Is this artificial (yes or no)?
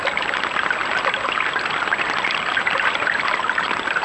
no